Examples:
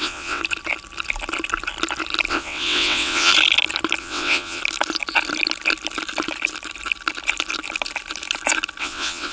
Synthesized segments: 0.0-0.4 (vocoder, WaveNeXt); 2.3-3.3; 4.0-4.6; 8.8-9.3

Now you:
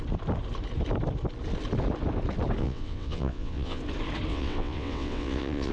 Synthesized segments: 2.6-3.8 (vocoder, WaveNeXt); 4.3-5.7

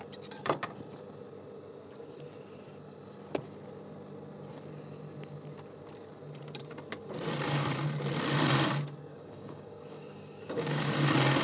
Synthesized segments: 9.1-10.9 (codec, DAC)

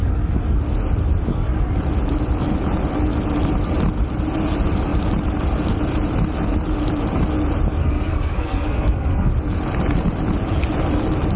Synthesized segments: 0.0-0.6 (codec, SNAC); 1.3-1.8; 7.8-9.3